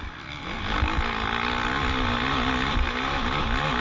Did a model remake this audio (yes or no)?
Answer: no